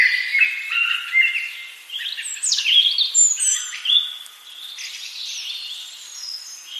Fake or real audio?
real